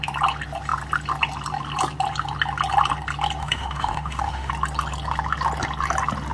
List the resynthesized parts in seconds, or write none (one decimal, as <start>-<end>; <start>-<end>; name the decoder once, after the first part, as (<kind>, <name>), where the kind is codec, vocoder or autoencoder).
3.4-4.5 (autoencoder, DAC-VAE)